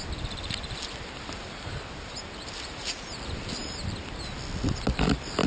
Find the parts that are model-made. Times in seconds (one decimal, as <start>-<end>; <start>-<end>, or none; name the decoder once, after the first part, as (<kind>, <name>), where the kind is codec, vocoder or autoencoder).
none